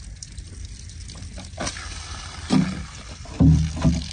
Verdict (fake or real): real